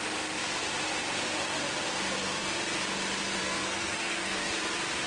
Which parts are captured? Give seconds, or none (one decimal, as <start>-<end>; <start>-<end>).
0.0-3.4; 4.5-5.1